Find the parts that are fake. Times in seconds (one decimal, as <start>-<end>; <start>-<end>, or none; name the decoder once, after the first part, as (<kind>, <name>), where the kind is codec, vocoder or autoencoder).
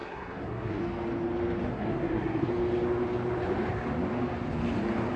0.0-0.8 (codec, SNAC); 1.7-2.5